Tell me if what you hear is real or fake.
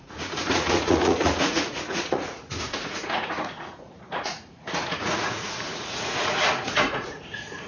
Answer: fake